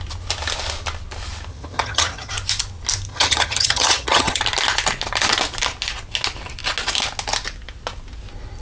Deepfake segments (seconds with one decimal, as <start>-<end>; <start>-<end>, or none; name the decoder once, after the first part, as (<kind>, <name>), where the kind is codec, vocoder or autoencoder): 1.5-2.3 (vocoder, HiFi-GAN); 3.1-4.4